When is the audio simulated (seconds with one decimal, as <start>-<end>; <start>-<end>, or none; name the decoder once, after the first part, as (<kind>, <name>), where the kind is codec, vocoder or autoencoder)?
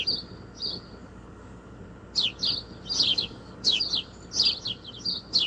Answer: 1.0-1.8 (codec, DAC); 3.1-3.8